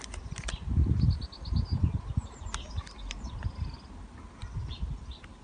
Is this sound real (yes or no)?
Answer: yes